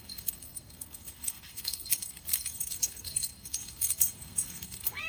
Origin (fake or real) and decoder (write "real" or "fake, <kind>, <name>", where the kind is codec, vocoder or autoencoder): fake, codec, SNAC